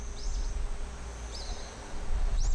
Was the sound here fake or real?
real